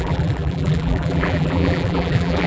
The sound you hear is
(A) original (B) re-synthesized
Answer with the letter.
B